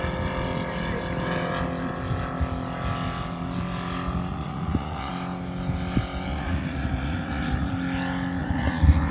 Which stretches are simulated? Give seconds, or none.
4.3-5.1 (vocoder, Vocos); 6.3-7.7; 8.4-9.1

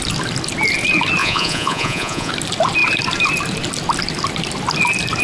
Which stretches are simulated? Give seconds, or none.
1.2-2.3 (vocoder, Vocos)

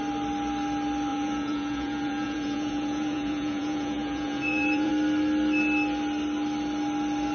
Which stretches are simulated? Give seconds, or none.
1.1-4.9 (vocoder, Vocos)